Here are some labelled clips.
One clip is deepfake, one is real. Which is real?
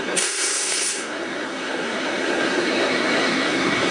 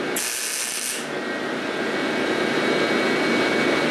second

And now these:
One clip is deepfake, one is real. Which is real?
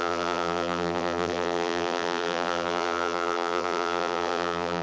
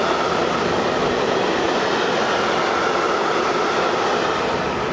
second